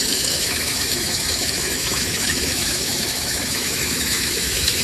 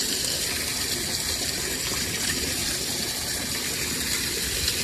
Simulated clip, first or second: first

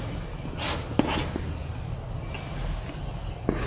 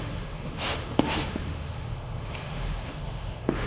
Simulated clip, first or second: second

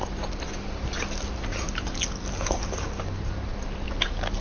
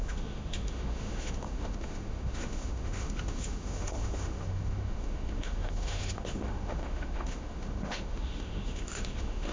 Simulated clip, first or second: second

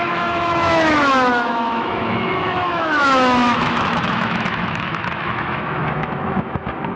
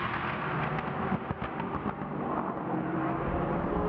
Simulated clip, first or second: first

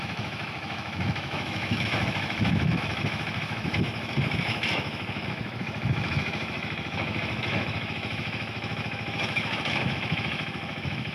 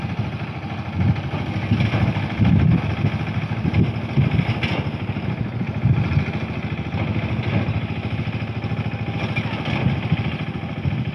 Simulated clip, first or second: first